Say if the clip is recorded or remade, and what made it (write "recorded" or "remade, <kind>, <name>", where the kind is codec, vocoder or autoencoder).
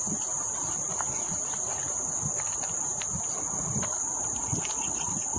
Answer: recorded